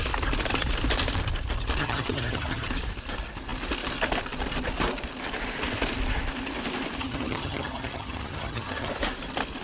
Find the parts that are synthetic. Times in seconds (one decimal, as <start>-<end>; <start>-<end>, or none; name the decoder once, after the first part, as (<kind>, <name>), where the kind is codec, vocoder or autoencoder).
1.8-2.7 (vocoder, HiFi-GAN); 7.0-8.9